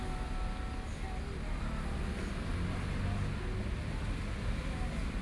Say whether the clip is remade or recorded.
recorded